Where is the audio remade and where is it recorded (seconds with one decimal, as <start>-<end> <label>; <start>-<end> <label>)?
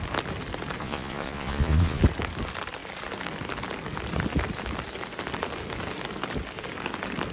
0.0-0.8 recorded; 0.8-2.0 remade; 2.0-7.3 recorded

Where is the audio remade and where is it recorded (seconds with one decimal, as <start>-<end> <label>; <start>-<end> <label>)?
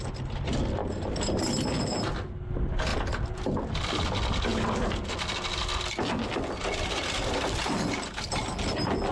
0.0-0.8 recorded; 0.8-1.4 remade; 1.4-2.9 recorded; 2.9-3.4 remade; 3.4-9.1 recorded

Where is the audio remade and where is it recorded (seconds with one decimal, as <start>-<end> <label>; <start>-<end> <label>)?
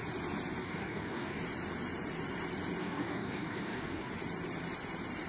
0.0-0.6 recorded; 0.6-1.4 remade; 1.4-2.8 recorded; 2.8-4.1 remade; 4.1-5.3 recorded